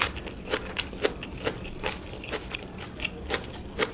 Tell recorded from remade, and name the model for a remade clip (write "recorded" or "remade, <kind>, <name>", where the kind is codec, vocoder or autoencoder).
recorded